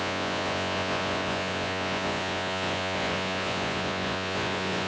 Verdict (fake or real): fake